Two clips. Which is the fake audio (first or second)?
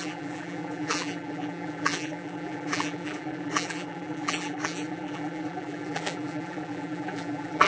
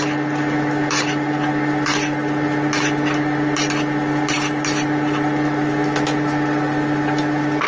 first